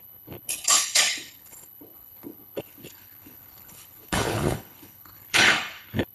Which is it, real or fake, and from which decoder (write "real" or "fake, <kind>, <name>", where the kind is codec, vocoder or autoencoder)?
fake, codec, HILCodec